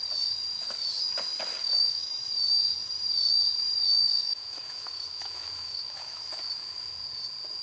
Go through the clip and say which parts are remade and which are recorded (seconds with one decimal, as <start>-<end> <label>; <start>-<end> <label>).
0.0-1.8 recorded; 1.8-2.3 remade; 2.3-4.0 recorded; 4.0-6.3 remade; 6.3-7.6 recorded